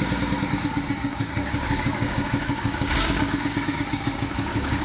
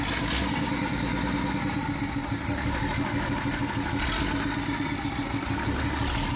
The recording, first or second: second